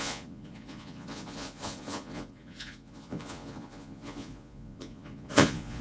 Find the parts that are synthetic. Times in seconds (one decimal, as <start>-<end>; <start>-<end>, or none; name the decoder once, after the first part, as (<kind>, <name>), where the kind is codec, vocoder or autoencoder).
0.0-5.8 (vocoder, Vocos)